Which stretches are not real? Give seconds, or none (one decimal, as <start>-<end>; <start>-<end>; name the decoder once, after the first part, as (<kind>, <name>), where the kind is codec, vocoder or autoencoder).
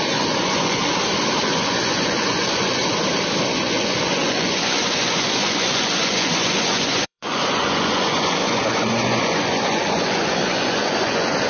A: 0.0-0.8 (vocoder, Vocos); 1.4-2.8; 3.5-11.5